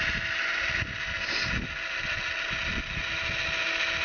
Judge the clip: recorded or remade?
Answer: recorded